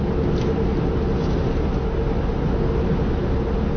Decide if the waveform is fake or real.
real